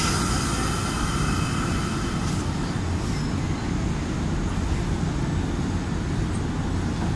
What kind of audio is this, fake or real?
real